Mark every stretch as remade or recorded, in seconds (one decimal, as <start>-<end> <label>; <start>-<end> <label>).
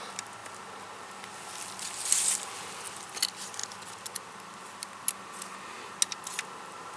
0.0-7.0 recorded